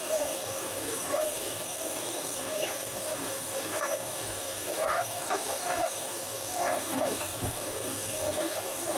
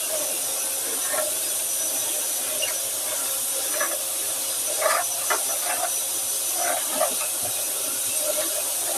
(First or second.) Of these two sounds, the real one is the second